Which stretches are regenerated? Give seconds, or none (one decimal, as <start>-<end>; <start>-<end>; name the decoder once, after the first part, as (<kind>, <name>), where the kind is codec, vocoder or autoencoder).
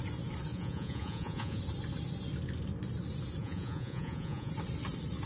0.5-1.6 (vocoder, Vocos); 3.4-4.5